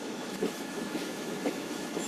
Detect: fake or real fake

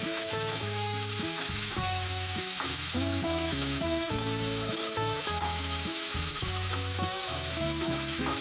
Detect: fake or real fake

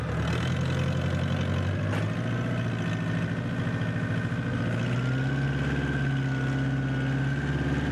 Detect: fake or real real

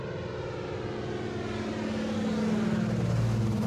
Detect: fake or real real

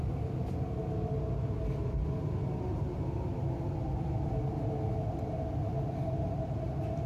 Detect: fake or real real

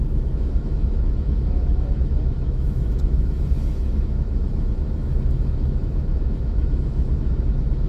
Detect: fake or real fake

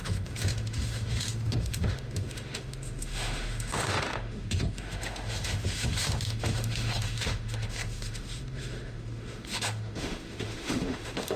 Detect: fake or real fake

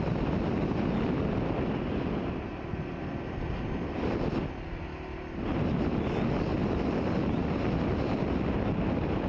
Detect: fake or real real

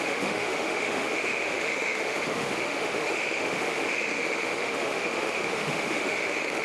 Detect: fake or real fake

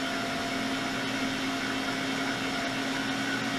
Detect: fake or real real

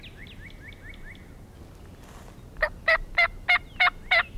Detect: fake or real real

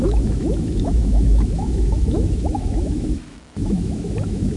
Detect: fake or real fake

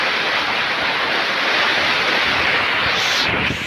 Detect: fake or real real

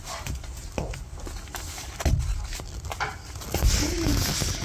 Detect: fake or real real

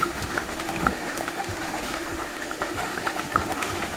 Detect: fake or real fake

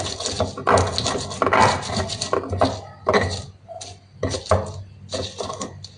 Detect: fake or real real